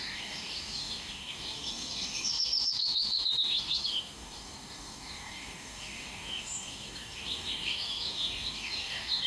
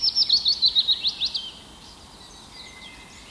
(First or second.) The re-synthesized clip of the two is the first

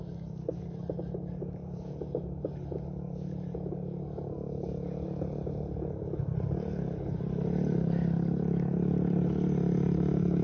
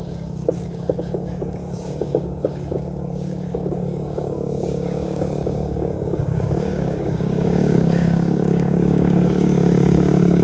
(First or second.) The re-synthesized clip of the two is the second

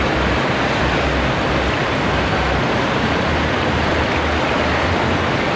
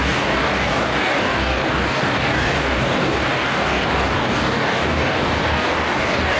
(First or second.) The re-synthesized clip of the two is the second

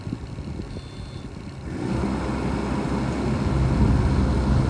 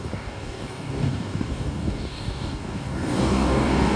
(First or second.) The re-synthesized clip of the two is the second